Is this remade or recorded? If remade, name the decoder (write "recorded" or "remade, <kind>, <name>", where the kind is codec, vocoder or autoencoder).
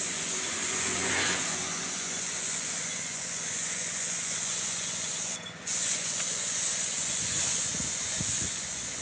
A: remade, vocoder, Vocos